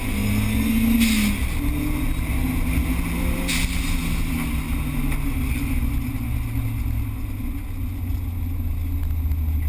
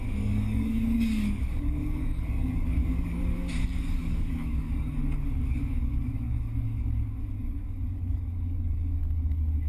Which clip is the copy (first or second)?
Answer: second